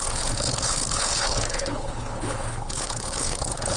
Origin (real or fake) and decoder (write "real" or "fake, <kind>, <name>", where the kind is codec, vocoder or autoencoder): fake, codec, HILCodec